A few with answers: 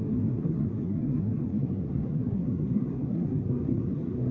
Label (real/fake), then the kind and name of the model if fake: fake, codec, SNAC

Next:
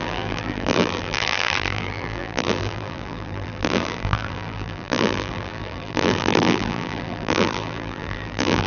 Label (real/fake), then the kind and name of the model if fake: fake, vocoder, BigVGAN v2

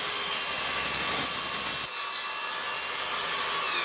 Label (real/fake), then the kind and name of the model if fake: real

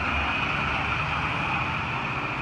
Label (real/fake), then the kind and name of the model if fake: real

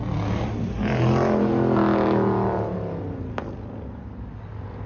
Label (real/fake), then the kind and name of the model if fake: real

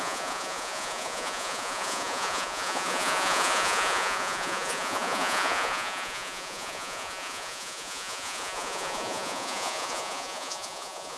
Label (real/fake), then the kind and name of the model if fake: fake, vocoder, Vocos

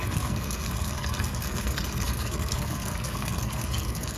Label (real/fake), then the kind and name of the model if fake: fake, codec, SNAC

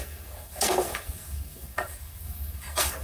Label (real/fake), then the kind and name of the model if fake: fake, codec, SNAC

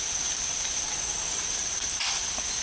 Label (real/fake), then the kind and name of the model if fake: real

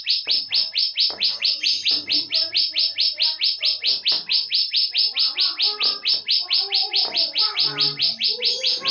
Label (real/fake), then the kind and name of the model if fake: real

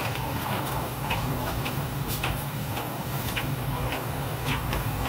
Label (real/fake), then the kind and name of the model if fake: fake, codec, DAC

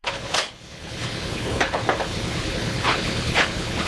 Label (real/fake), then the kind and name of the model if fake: fake, codec, HILCodec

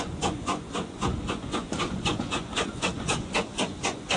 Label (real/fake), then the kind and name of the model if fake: fake, vocoder, Vocos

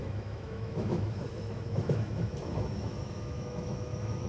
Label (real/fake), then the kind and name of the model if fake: fake, autoencoder, DAC-VAE